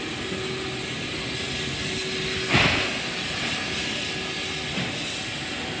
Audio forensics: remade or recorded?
recorded